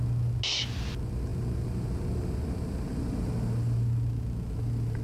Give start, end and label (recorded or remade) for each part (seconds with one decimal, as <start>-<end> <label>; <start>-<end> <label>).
0.0-5.0 recorded